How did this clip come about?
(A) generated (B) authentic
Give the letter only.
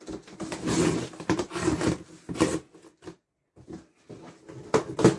B